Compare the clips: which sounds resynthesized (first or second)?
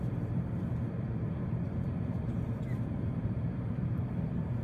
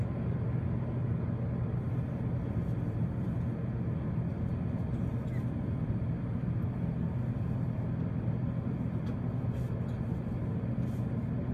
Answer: first